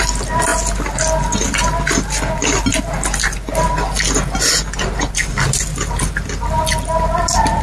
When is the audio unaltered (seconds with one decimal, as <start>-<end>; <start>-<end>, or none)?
0.0-7.6